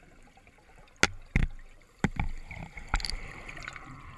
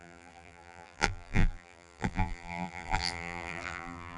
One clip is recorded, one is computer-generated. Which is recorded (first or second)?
first